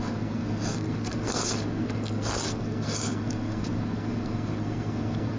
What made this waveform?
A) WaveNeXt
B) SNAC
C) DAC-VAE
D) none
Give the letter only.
B